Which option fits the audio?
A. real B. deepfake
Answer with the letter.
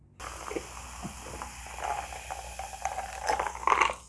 A